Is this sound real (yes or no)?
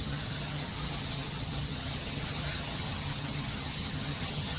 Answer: no